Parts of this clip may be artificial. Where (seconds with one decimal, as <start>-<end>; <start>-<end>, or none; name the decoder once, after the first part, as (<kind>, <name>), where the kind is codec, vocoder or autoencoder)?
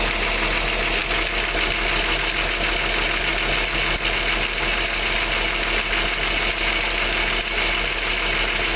none